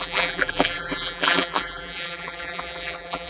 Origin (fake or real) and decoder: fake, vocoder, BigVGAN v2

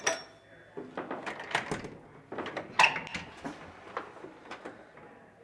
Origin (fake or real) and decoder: real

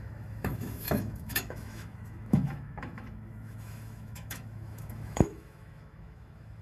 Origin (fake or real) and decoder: fake, autoencoder, DAC-VAE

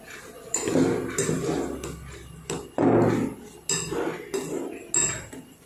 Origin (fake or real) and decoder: real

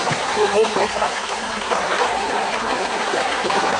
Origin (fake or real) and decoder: fake, codec, SNAC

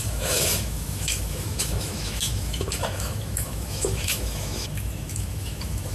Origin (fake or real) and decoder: fake, autoencoder, DAC-VAE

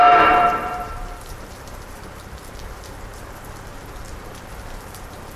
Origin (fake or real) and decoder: fake, vocoder, BigVGAN v2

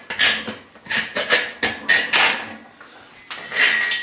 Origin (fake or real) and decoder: real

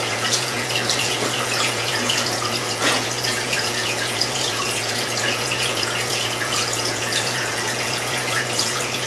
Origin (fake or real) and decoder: fake, vocoder, Vocos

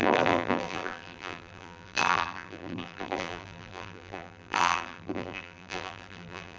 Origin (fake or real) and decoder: fake, vocoder, BigVGAN v2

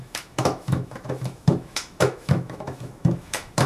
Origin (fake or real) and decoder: fake, autoencoder, DAC-VAE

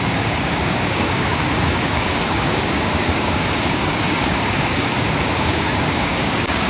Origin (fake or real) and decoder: fake, codec, DAC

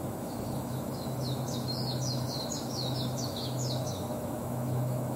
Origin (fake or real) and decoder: fake, autoencoder, DAC-VAE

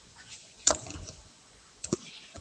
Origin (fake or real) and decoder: fake, vocoder, Vocos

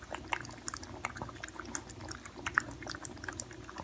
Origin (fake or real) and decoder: real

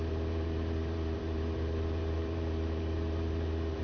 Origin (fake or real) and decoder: fake, vocoder, BigVGAN v2